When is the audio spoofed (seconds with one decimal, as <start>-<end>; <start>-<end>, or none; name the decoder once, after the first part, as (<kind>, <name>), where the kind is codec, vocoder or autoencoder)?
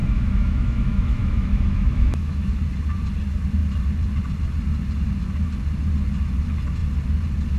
0.0-2.5 (autoencoder, DAC-VAE)